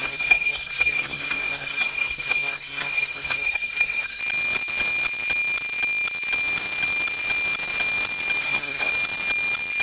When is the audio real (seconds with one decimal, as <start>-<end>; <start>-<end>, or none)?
4.2-8.4; 8.9-9.8